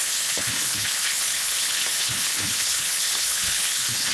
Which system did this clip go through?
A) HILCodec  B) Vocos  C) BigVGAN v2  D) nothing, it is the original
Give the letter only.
A